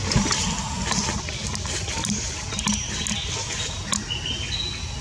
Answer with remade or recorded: recorded